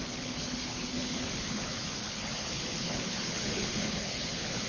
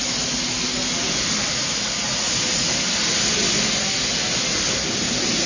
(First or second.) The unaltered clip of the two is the second